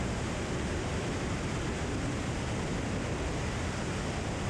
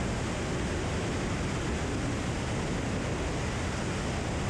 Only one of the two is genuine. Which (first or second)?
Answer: second